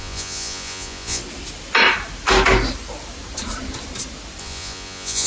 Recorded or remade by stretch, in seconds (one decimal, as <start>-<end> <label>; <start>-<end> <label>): 0.0-1.2 remade; 1.2-4.4 recorded; 4.4-5.3 remade